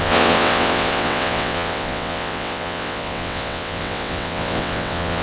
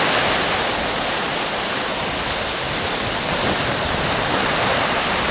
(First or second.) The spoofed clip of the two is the first